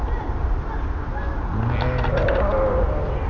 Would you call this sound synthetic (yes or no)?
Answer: no